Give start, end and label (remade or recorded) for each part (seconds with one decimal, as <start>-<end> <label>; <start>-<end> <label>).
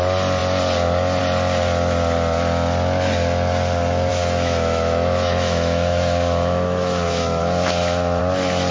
0.0-4.1 recorded; 4.1-8.2 remade; 8.2-8.7 recorded